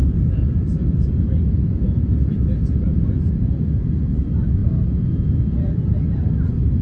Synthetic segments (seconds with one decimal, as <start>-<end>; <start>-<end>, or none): 0.0-3.3; 4.6-5.9